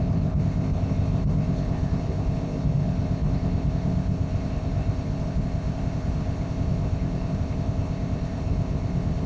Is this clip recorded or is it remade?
remade